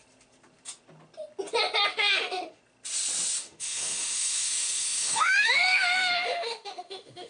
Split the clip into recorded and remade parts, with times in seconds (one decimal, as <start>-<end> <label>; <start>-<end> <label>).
0.0-1.9 recorded; 1.9-2.6 remade; 2.6-3.4 recorded; 3.4-7.3 remade